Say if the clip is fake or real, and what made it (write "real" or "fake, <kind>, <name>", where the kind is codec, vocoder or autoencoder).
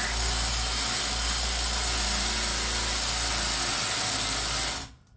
real